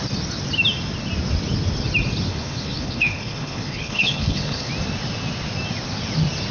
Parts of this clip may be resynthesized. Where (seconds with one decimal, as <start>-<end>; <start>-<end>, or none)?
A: 2.3-4.7